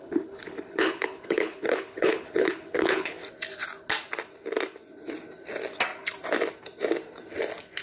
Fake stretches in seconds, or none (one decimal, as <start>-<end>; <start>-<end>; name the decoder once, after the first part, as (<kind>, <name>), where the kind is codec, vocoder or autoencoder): 0.0-3.2 (codec, HILCodec)